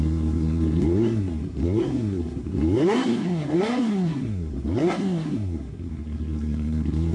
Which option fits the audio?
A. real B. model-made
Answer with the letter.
B